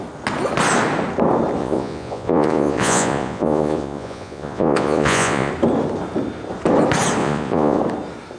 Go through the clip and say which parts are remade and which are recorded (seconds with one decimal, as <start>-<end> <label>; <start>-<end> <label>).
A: 0.0-1.6 recorded; 1.6-5.5 remade; 5.5-7.2 recorded; 7.2-7.8 remade; 7.8-8.4 recorded